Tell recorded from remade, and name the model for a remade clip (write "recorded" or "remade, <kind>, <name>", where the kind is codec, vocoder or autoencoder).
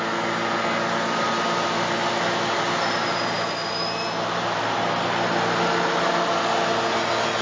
recorded